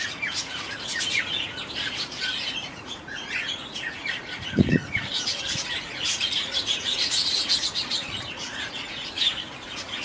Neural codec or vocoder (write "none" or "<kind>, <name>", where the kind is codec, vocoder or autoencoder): vocoder, Vocos